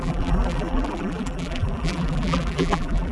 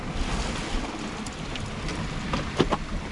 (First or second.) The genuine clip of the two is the second